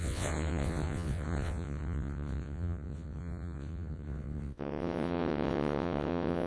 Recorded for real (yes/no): no